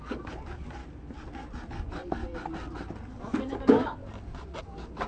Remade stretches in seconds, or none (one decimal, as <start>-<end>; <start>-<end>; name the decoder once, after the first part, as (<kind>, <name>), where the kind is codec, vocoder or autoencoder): 0.0-0.8 (codec, DAC); 1.7-2.2; 3.2-4.0; 4.6-5.1